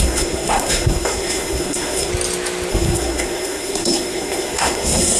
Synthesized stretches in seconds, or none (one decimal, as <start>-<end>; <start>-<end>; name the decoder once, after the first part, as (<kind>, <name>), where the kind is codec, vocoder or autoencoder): 0.0-2.1 (codec, SNAC); 2.7-5.2